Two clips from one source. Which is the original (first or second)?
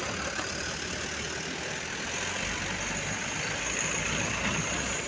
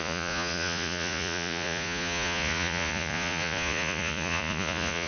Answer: first